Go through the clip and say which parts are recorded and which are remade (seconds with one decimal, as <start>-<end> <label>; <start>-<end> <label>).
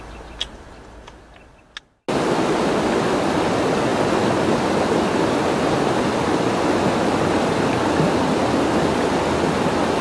0.0-10.0 recorded